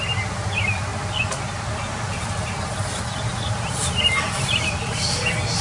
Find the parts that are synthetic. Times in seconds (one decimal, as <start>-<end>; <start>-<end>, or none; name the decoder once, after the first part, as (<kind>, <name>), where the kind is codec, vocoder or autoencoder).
3.3-4.7 (vocoder, BigVGAN v2)